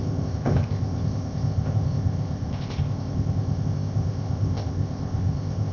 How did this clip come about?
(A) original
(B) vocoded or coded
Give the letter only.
B